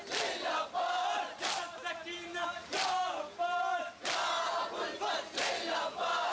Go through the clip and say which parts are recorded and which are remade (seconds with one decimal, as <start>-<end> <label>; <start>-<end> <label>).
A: 0.0-6.3 recorded